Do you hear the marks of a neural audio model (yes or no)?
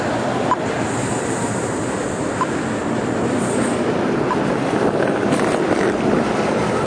yes